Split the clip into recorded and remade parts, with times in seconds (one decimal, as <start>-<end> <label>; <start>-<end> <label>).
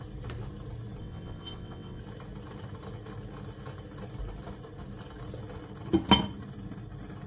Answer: 0.0-1.0 recorded; 1.0-2.0 remade; 2.0-7.3 recorded